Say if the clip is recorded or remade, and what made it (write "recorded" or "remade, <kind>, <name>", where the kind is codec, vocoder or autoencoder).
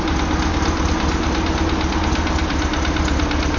recorded